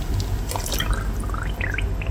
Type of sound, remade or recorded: recorded